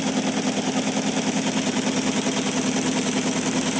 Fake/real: real